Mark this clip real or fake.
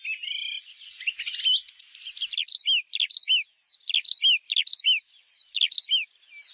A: real